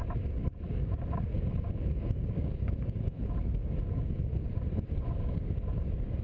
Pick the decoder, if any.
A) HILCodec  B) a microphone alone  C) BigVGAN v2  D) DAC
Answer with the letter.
D